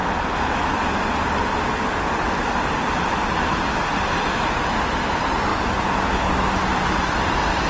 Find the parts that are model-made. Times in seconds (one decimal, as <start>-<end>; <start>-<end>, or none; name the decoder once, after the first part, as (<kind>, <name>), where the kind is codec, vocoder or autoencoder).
5.5-6.3 (vocoder, Vocos)